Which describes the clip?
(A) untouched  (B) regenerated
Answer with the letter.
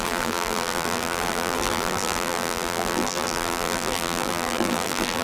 B